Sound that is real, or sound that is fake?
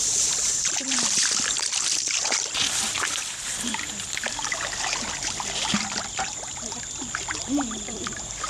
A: fake